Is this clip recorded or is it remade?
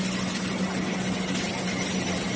recorded